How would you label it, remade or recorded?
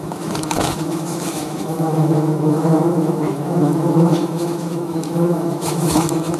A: remade